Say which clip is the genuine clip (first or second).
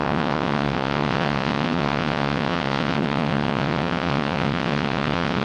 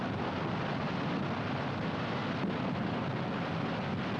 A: second